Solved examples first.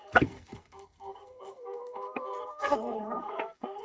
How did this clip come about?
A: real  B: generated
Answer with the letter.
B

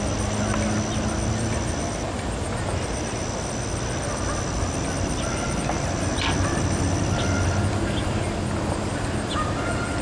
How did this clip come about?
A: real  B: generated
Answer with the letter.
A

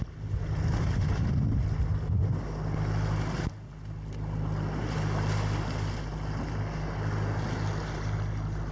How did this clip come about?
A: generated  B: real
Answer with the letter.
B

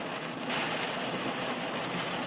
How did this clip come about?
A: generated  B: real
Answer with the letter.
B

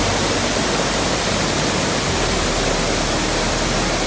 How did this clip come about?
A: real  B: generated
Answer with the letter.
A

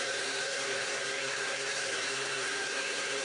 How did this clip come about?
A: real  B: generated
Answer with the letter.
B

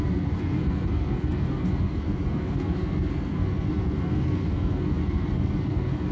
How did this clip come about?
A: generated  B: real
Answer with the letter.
A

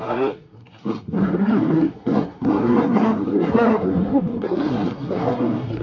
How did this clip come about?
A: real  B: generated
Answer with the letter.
B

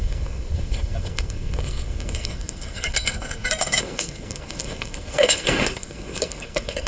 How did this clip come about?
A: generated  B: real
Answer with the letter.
A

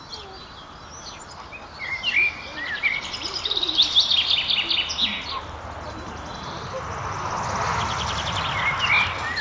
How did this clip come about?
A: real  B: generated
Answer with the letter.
A